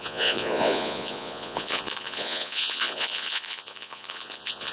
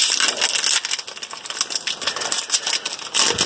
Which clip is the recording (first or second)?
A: second